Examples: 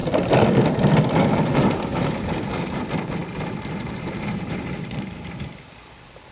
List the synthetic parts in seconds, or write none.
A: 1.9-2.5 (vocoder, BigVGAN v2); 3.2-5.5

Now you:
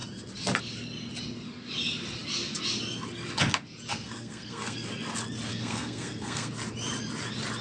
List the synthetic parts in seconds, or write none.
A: 3.9-4.9 (codec, SNAC); 5.5-6.5

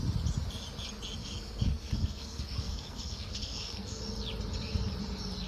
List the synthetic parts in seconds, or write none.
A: 1.2-4.0 (codec, SNAC)

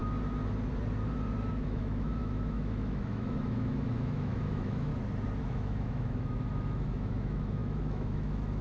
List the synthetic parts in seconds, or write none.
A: 1.5-4.9 (autoencoder, DAC-VAE); 5.4-8.6

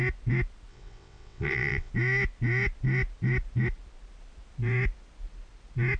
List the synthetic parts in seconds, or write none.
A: 0.7-1.9 (vocoder, WaveNeXt)

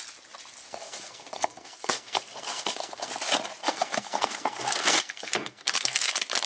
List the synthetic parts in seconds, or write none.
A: 0.6-3.1 (codec, SNAC); 3.6-6.1

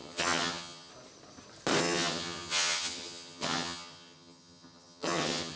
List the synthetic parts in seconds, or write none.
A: 0.0-0.9 (vocoder, HiFi-GAN); 1.8-5.6

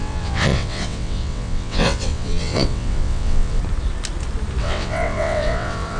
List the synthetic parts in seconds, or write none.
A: 0.0-3.6 (vocoder, WaveNeXt); 4.6-6.0